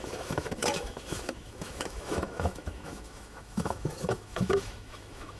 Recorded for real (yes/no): no